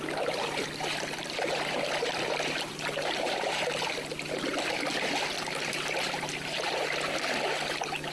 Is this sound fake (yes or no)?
no